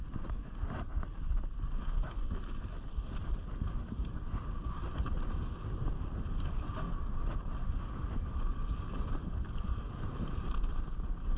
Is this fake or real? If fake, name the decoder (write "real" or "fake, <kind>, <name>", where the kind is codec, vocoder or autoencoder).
real